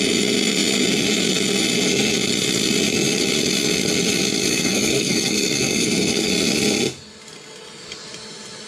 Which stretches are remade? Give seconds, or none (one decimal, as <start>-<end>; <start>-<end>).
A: 4.5-6.3